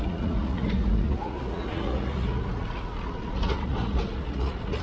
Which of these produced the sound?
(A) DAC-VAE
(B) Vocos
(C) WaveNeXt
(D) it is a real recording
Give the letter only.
B